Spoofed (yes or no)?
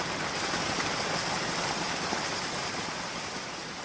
no